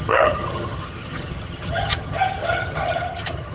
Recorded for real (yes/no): no